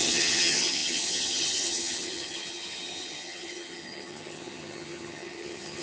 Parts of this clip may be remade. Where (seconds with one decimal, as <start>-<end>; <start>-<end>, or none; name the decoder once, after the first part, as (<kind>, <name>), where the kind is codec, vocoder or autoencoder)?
0.0-5.8 (vocoder, HiFi-GAN)

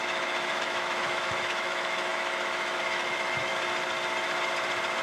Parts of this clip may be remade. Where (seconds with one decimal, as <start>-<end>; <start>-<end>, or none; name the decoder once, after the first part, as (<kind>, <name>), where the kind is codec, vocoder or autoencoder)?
0.0-3.5 (autoencoder, DAC-VAE)

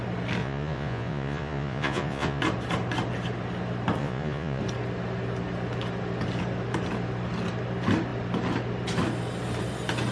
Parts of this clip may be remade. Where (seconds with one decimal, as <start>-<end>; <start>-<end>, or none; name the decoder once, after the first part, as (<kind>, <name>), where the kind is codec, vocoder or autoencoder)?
0.4-2.4 (vocoder, Vocos); 4.0-4.6

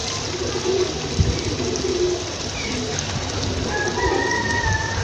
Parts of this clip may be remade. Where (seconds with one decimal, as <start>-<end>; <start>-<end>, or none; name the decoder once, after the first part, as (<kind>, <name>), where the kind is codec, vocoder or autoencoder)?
none

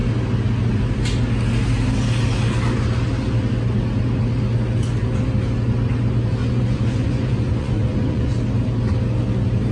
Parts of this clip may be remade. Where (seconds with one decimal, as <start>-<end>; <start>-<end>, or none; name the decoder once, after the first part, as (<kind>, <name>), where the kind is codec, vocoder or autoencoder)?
6.4-8.3 (vocoder, Vocos)

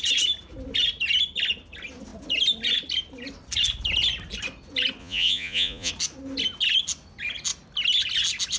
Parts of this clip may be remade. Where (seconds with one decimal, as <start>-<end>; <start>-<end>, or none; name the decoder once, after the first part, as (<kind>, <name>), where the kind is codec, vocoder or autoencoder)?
5.0-5.9 (vocoder, Vocos)

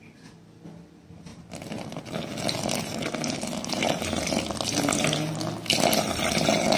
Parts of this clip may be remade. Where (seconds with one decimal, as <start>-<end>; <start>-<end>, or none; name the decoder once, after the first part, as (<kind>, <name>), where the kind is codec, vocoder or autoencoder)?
none

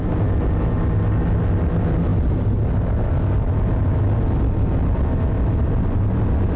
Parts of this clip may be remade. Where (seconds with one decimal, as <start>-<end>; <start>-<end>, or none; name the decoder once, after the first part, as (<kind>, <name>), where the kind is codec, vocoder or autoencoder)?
none